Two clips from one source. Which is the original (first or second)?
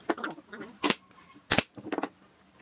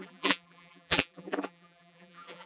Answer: first